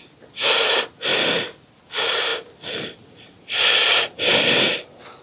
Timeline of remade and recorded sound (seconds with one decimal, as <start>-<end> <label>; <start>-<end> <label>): 0.0-1.1 recorded; 1.1-1.8 remade; 1.8-2.3 recorded; 2.3-4.4 remade; 4.4-5.2 recorded